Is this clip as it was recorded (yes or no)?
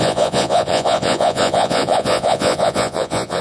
no